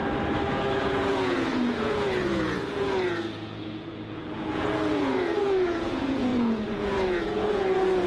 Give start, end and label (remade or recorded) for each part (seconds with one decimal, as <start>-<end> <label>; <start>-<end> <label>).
0.0-0.5 recorded; 0.5-8.1 remade